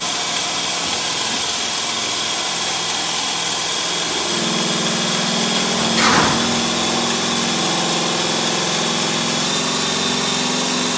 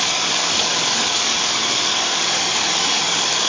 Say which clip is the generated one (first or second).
second